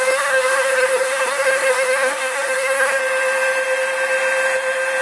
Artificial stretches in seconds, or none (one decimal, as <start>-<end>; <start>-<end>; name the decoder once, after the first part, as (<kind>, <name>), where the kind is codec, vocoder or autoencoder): 0.0-3.0 (codec, SNAC)